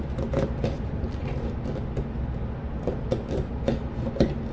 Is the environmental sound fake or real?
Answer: real